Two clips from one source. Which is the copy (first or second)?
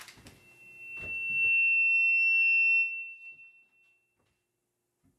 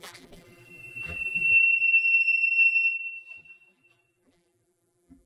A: second